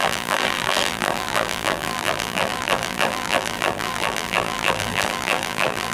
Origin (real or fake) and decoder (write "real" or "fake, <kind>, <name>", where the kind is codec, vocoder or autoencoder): fake, vocoder, BigVGAN v2